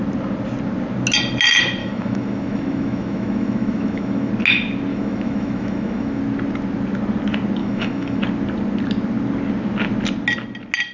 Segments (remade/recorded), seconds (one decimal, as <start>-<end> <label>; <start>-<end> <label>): 0.0-1.8 recorded; 1.8-4.3 remade; 4.3-4.9 recorded; 4.9-6.2 remade; 6.2-7.6 recorded; 7.6-8.2 remade; 8.2-10.9 recorded